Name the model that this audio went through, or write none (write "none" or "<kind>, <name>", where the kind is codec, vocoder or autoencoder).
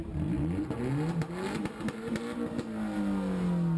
none